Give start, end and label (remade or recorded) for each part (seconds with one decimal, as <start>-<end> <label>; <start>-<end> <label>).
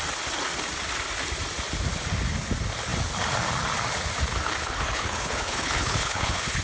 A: 0.0-4.6 recorded; 4.6-6.6 remade